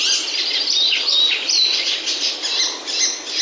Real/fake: real